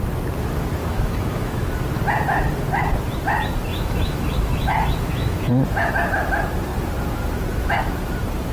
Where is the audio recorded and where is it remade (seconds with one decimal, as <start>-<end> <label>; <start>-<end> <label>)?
0.0-0.8 recorded; 0.8-1.7 remade; 1.7-3.7 recorded; 3.7-5.5 remade; 5.5-8.5 recorded